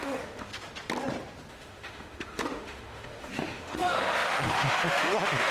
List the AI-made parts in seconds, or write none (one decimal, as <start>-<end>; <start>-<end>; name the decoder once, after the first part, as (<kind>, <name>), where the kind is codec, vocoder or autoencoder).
0.0-0.5 (autoencoder, DAC-VAE); 1.5-5.5